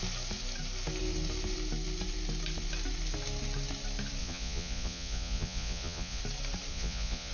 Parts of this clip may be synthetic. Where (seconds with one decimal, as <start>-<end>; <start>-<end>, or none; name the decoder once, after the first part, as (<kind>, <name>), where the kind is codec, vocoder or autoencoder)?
4.2-6.2 (vocoder, Vocos); 6.7-7.3